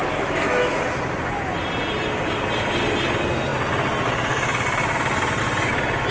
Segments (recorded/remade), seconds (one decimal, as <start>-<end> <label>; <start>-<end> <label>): 0.0-0.8 remade; 0.8-6.1 recorded